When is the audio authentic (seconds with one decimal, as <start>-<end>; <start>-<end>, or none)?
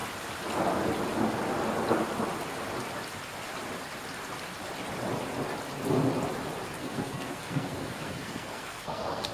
0.0-6.8